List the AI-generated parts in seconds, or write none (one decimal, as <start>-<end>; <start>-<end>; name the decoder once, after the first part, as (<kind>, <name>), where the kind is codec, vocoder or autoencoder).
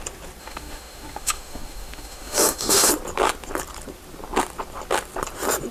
0.4-2.9 (autoencoder, DAC-VAE)